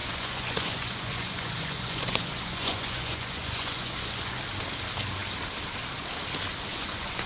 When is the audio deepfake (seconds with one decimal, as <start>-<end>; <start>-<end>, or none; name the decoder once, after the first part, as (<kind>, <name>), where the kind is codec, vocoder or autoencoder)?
0.0-4.4 (vocoder, Vocos); 6.7-7.3